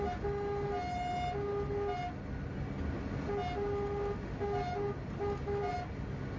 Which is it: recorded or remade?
recorded